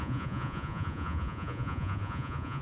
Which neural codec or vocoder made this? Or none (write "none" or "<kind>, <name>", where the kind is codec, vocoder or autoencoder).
vocoder, Vocos